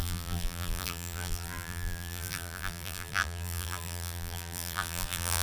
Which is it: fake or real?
fake